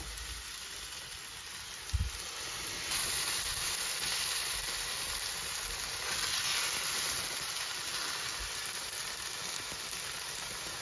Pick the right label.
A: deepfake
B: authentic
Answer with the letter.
B